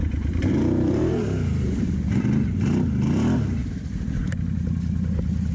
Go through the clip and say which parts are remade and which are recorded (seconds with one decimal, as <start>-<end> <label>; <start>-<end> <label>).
0.0-2.5 remade; 2.5-3.6 recorded; 3.6-4.3 remade; 4.3-5.5 recorded